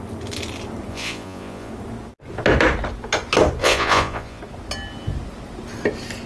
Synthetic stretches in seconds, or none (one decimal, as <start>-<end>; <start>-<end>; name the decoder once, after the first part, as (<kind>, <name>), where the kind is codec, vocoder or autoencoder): 0.9-1.7 (vocoder, Vocos); 3.6-4.4